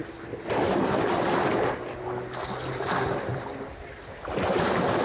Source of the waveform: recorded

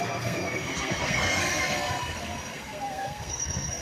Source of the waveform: remade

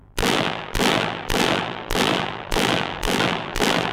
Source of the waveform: remade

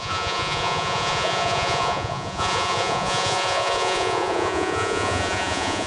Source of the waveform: remade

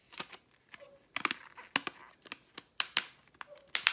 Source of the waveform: recorded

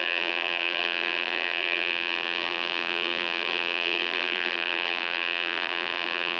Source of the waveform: remade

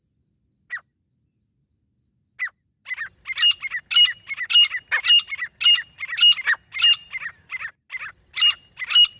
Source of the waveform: recorded